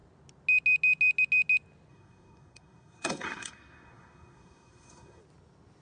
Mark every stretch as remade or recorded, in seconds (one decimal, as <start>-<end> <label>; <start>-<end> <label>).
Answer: 0.0-1.9 recorded; 1.9-5.2 remade; 5.2-5.8 recorded